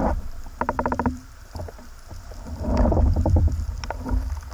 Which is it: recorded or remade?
remade